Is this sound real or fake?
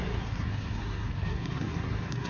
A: fake